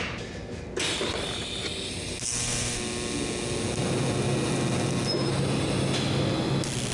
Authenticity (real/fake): real